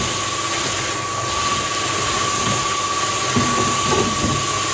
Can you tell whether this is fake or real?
real